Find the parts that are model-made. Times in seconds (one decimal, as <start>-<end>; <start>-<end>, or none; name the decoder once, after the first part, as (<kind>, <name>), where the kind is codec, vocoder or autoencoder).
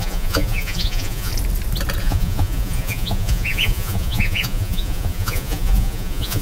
0.0-1.3 (vocoder, Vocos); 2.0-6.4